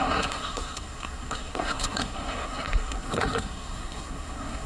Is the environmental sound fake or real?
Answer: fake